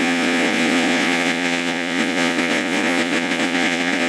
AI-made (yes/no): yes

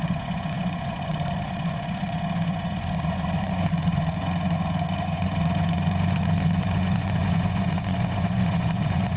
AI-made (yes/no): yes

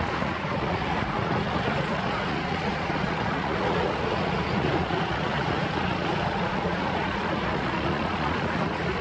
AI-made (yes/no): yes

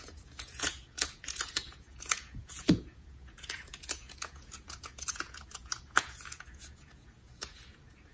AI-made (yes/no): yes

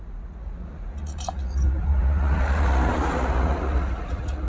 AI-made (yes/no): yes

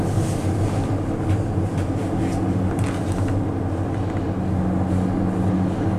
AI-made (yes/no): no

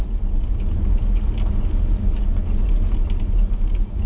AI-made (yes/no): no